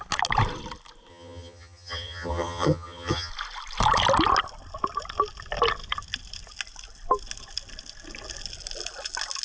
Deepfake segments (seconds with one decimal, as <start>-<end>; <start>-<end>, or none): 1.1-3.3